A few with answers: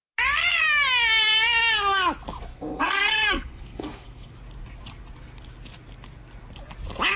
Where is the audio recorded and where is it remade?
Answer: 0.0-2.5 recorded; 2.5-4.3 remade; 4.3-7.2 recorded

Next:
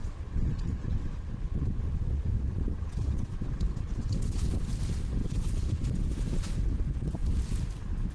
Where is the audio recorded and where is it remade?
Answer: 0.0-4.7 remade; 4.7-5.2 recorded; 5.2-6.1 remade; 6.1-8.1 recorded

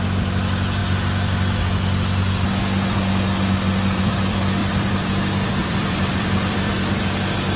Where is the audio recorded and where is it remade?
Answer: 0.0-4.6 recorded; 4.6-6.7 remade; 6.7-7.6 recorded

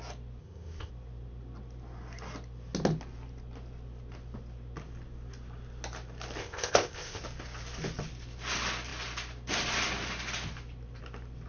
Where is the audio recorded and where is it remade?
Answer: 0.0-0.4 recorded; 0.4-0.9 remade; 0.9-6.4 recorded; 6.4-7.2 remade; 7.2-11.5 recorded